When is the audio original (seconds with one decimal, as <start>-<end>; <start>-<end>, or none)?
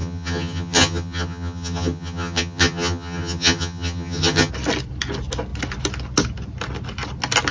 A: 4.5-7.5